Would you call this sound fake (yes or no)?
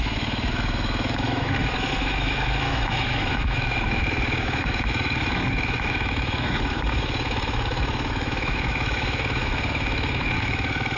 yes